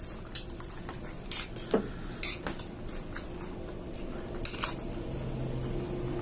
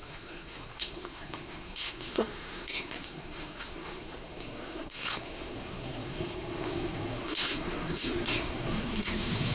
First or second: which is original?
first